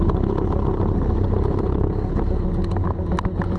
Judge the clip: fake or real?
real